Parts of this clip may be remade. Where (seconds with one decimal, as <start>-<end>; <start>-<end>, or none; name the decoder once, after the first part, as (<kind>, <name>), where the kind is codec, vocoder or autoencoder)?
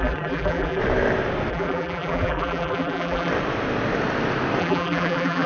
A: 0.0-0.8 (vocoder, BigVGAN v2); 1.5-3.3; 4.6-5.5